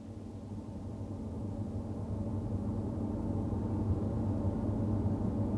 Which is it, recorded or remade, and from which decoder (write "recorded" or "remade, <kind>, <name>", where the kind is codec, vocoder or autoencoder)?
recorded